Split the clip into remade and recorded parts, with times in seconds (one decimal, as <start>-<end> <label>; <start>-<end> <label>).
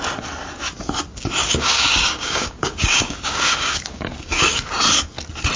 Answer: 0.0-1.4 recorded; 1.4-4.7 remade; 4.7-5.6 recorded